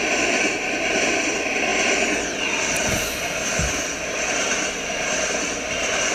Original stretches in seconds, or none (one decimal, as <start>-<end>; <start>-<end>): 0.0-6.1